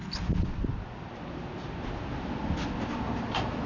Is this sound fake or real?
real